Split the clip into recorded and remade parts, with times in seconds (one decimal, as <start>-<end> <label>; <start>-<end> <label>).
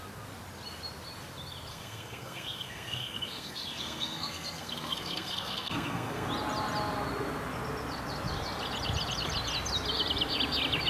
0.0-1.7 recorded; 1.7-6.3 remade; 6.3-10.9 recorded